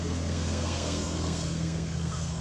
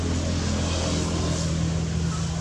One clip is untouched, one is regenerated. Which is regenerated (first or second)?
first